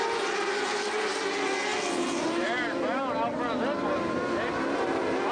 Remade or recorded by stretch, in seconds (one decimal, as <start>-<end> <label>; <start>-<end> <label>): 0.0-5.3 recorded